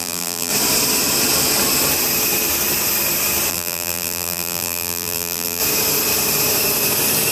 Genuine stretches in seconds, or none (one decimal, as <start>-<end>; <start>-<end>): 0.5-3.5; 5.6-7.3